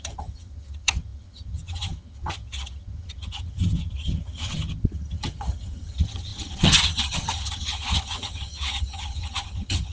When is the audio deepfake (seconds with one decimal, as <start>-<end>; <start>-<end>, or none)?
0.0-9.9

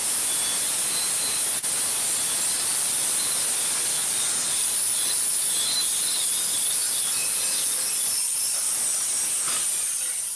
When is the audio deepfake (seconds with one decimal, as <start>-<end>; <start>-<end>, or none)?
2.7-3.4; 4.0-8.8

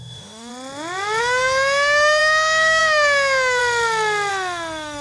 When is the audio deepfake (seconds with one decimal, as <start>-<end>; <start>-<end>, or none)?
0.0-0.5; 1.2-3.6; 4.3-5.0